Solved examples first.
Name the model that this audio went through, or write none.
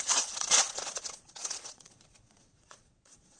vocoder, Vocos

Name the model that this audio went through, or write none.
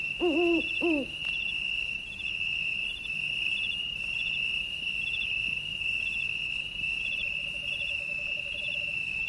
vocoder, BigVGAN v2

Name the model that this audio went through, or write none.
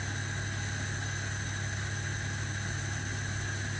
none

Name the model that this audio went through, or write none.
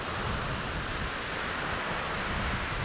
none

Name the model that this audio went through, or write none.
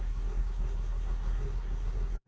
codec, SNAC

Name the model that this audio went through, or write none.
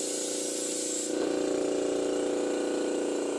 none